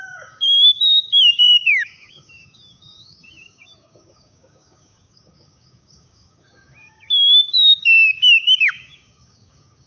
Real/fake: fake